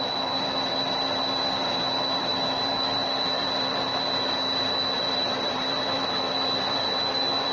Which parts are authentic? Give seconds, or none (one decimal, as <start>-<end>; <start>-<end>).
3.9-5.0